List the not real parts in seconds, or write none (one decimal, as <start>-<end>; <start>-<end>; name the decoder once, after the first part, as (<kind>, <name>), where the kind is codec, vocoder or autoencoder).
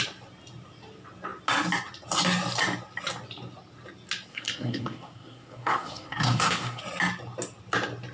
4.3-6.8 (codec, SNAC)